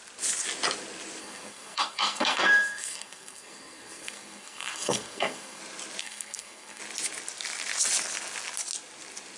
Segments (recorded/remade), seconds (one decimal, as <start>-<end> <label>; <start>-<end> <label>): 0.0-1.2 recorded; 1.2-5.6 remade; 5.6-6.0 recorded; 6.0-6.8 remade; 6.8-9.4 recorded